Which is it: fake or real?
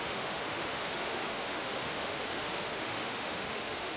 fake